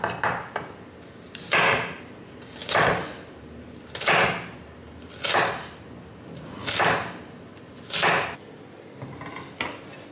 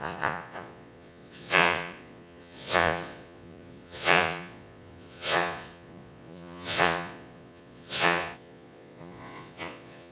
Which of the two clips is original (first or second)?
first